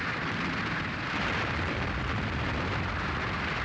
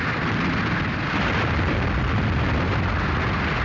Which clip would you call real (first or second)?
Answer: second